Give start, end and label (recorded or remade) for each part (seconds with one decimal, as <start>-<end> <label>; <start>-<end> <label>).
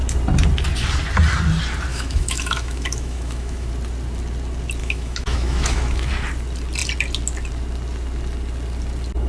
0.0-1.9 recorded; 1.9-3.7 remade; 3.7-4.8 recorded; 4.8-6.1 remade; 6.1-9.3 recorded